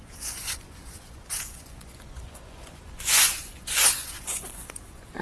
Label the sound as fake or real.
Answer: fake